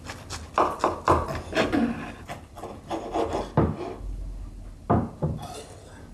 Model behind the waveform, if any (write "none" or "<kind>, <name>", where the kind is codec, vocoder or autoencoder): none